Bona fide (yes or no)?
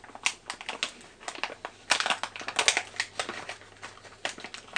yes